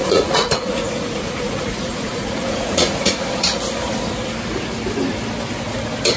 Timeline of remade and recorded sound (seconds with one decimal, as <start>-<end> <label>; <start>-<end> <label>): 0.0-3.2 remade; 3.2-6.2 recorded